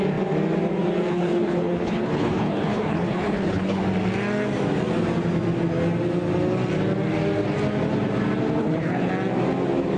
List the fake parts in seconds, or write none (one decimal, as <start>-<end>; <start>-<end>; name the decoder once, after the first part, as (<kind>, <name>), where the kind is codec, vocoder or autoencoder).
1.1-3.8 (codec, HILCodec); 8.6-9.1